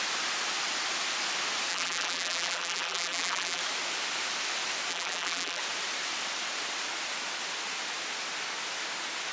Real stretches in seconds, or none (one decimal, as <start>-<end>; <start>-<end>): 0.0-1.7; 3.6-4.9; 5.6-9.3